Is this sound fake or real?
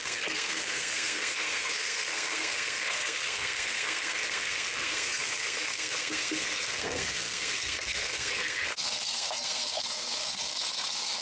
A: fake